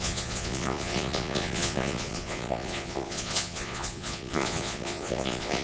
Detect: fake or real fake